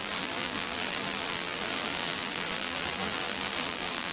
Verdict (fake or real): fake